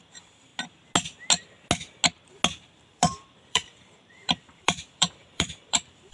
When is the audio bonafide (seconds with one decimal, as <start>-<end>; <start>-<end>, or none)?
0.5-2.5